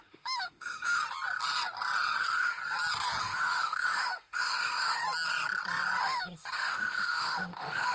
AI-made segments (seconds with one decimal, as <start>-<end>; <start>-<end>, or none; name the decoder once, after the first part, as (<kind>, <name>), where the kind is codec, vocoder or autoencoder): 0.0-1.0 (autoencoder, DAC-VAE); 2.2-2.6; 3.2-5.0; 6.0-7.9